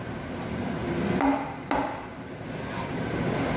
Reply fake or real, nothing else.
real